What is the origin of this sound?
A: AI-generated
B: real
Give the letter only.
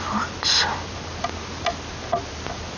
B